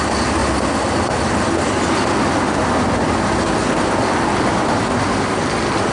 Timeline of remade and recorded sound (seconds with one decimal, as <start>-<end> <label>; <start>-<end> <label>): 0.0-5.9 recorded